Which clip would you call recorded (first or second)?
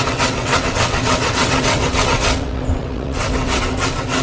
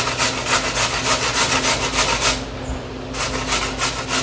second